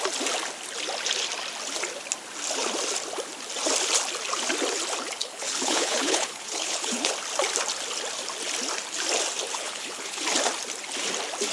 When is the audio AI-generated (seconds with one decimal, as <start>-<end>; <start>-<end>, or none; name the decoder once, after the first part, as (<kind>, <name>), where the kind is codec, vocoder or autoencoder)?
5.2-7.1 (codec, HILCodec); 9.5-10.2